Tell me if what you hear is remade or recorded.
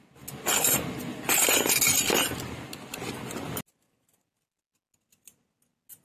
recorded